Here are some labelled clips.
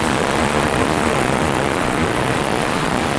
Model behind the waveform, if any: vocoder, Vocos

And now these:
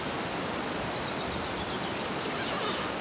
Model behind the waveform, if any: none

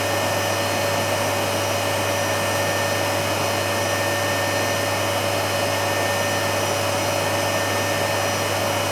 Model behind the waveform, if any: none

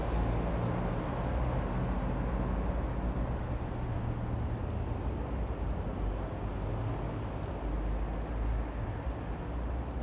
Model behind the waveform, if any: none